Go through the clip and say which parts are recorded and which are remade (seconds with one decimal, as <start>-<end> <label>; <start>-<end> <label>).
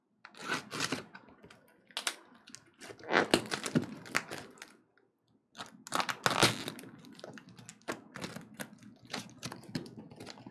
0.0-10.5 recorded